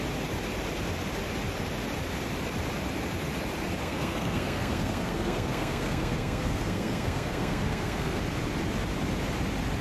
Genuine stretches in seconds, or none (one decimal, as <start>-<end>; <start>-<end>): 0.0-3.8; 8.2-9.8